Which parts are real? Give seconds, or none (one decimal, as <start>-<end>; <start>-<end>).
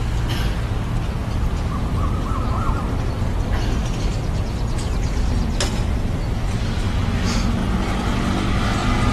0.0-9.1